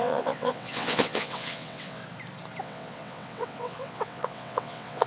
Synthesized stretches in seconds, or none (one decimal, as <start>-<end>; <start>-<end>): 0.0-2.0; 2.6-5.1